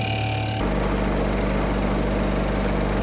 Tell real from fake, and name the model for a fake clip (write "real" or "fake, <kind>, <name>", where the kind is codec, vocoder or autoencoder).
real